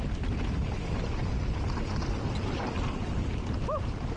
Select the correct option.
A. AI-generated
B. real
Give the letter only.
B